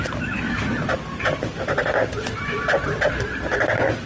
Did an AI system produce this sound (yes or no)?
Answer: no